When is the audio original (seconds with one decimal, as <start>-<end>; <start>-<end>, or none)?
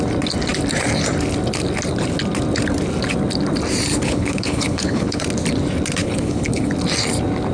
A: 0.0-3.9; 5.2-6.0; 6.7-7.5